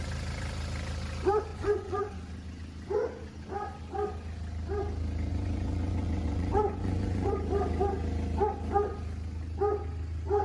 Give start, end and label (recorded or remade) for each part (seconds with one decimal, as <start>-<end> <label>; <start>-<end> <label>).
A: 0.0-1.5 recorded; 1.5-2.1 remade; 2.1-5.3 recorded; 5.3-7.3 remade; 7.3-10.4 recorded